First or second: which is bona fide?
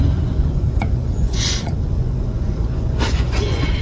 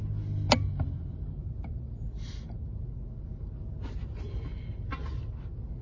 second